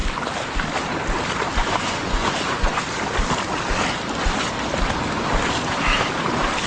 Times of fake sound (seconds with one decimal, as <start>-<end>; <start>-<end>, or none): 1.6-2.8